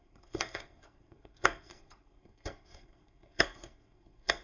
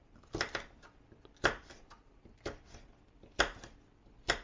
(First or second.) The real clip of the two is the second